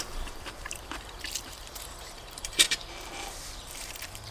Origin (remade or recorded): remade